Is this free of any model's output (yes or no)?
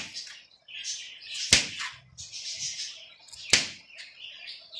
yes